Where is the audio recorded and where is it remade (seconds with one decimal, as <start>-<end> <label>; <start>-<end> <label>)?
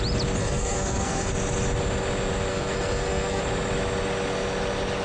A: 0.0-0.4 recorded; 0.4-1.3 remade; 1.3-2.5 recorded; 2.5-3.4 remade; 3.4-5.0 recorded